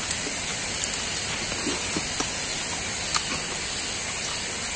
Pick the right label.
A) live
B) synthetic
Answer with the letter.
A